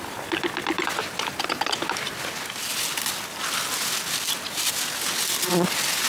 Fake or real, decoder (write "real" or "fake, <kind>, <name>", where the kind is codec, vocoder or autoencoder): real